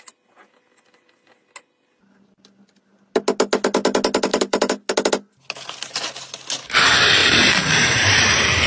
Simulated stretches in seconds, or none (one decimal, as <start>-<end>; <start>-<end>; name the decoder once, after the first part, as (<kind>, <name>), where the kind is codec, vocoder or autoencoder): 4.3-4.9 (vocoder, BigVGAN v2); 7.2-8.7

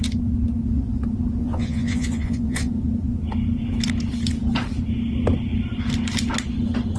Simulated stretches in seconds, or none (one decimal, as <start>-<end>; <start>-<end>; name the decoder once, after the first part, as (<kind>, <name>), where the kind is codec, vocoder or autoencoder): 1.4-2.7 (vocoder, Vocos)

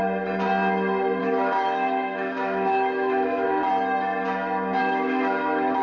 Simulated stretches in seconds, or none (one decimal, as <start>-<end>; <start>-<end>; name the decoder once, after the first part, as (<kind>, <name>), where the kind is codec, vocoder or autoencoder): 1.2-3.7 (autoencoder, DAC-VAE); 4.8-5.8

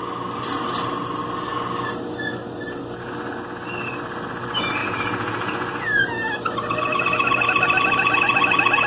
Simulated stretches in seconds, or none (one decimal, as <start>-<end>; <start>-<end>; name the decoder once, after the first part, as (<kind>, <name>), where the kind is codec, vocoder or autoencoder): 4.8-6.1 (vocoder, Vocos)

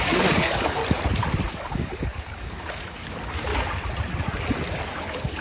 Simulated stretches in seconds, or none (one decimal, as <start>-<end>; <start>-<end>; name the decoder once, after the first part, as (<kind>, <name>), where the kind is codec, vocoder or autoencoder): 0.0-0.8 (codec, DAC); 1.5-3.5; 5.0-5.4

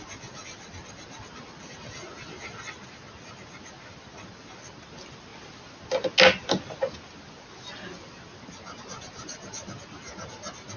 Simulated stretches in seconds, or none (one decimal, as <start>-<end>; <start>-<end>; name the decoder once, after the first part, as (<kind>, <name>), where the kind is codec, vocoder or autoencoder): none